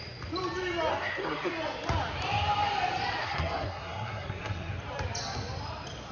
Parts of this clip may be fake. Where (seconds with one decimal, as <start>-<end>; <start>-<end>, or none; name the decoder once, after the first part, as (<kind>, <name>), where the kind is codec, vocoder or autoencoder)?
0.9-1.5 (codec, SNAC); 3.2-4.7